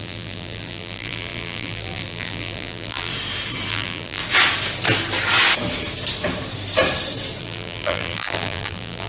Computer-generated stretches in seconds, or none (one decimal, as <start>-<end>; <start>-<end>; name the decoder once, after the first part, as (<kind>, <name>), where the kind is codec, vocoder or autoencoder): 0.0-3.1 (vocoder, BigVGAN v2); 3.7-4.2; 7.4-9.1